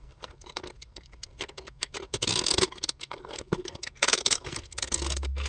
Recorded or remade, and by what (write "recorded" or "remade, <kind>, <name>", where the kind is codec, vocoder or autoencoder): remade, codec, SNAC